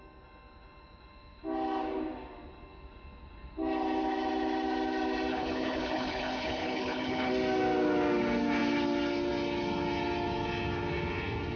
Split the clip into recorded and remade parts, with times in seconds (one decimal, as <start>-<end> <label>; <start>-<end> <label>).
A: 0.0-5.3 recorded; 5.3-7.3 remade; 7.3-11.6 recorded